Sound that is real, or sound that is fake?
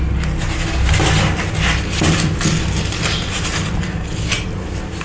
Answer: real